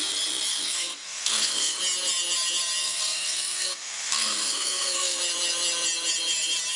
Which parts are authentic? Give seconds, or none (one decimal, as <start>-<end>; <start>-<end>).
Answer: 0.0-0.5; 1.8-2.8; 5.2-6.8